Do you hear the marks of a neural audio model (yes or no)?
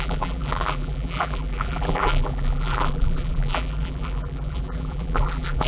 yes